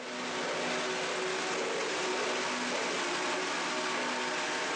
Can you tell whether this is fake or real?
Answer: real